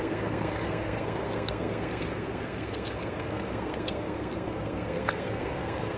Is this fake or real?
fake